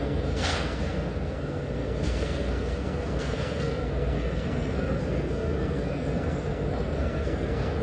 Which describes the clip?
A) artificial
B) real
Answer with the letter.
A